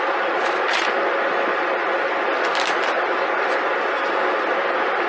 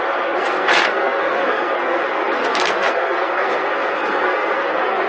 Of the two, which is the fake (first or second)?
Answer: second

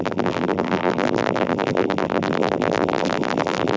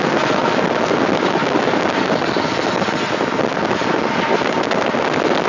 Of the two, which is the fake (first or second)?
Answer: first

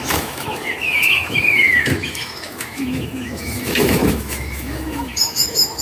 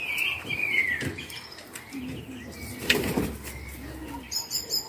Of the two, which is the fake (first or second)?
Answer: first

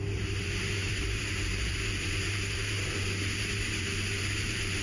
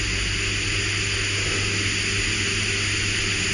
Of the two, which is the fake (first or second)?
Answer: first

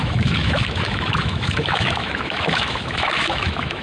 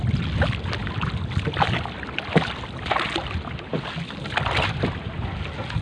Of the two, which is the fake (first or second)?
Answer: first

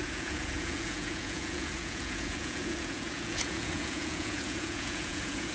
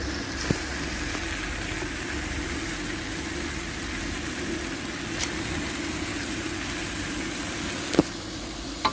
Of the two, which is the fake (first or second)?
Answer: first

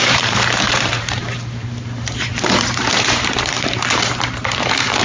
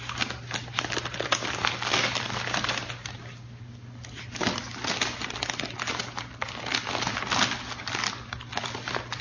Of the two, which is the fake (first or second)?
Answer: first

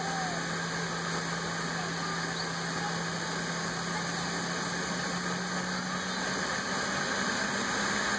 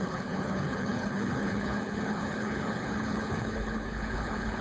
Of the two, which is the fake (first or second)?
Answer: second